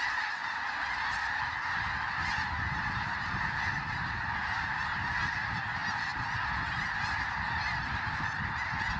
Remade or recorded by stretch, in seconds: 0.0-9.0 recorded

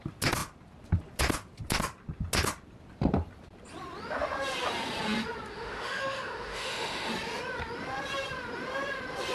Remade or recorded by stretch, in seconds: 0.0-5.5 recorded; 5.5-7.1 remade; 7.1-9.3 recorded

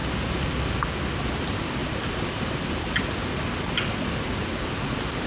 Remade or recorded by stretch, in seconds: 0.0-5.3 recorded

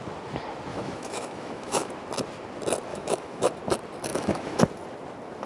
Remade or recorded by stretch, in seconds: 0.0-0.7 recorded; 0.7-1.9 remade; 1.9-2.9 recorded; 2.9-3.5 remade; 3.5-4.1 recorded; 4.1-4.6 remade; 4.6-5.5 recorded